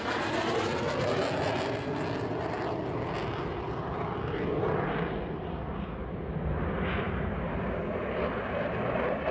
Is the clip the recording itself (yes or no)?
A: yes